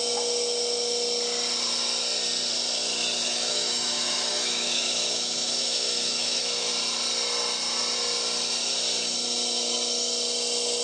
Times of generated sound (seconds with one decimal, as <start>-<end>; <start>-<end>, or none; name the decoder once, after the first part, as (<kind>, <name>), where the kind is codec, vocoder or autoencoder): 3.2-6.7 (autoencoder, DAC-VAE)